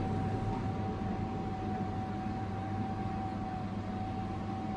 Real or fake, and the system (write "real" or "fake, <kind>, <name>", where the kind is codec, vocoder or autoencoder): real